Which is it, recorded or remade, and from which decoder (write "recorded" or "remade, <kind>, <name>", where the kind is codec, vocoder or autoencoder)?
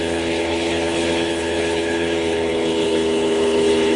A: remade, codec, HILCodec